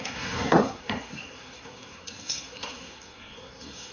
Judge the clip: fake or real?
fake